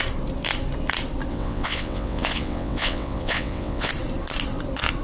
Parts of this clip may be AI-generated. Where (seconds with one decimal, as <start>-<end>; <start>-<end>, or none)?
1.3-3.9